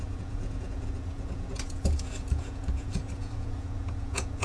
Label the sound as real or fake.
fake